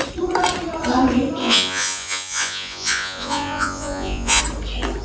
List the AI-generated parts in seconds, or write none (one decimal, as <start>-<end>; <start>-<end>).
1.4-4.4